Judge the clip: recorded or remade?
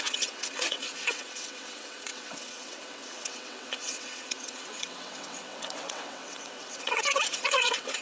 remade